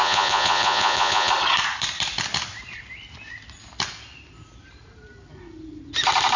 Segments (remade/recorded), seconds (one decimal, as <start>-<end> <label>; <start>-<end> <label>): 0.0-1.3 remade; 1.3-6.4 recorded